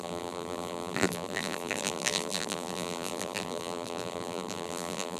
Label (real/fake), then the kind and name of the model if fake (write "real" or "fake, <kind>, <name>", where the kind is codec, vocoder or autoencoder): fake, vocoder, BigVGAN v2